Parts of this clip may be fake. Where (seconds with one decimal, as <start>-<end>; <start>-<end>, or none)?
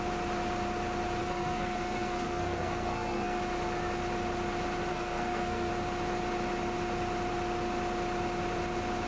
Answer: 1.2-3.4; 4.9-5.7